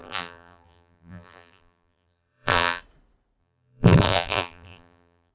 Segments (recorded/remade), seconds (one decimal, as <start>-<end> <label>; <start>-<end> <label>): 0.0-2.8 remade; 2.8-3.4 recorded; 3.4-5.3 remade